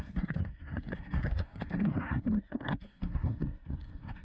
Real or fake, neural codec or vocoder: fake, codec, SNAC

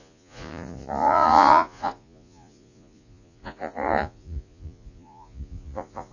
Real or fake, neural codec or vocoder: fake, vocoder, Vocos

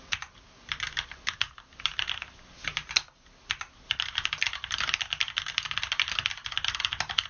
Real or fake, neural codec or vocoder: real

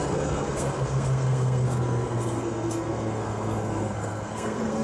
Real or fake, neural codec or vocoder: fake, codec, SNAC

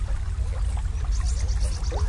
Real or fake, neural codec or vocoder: real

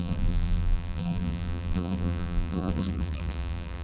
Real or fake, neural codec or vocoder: fake, vocoder, BigVGAN v2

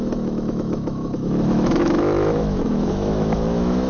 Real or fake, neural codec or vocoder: fake, autoencoder, DAC-VAE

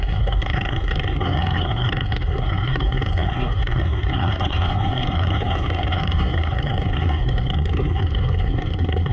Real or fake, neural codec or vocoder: fake, codec, SNAC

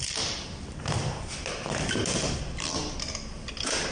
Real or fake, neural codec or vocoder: real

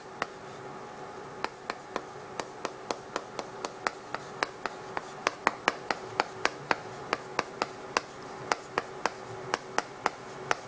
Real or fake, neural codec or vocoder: real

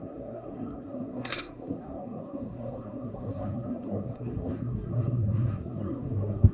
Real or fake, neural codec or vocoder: fake, codec, SNAC